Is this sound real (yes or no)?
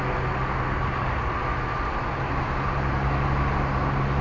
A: yes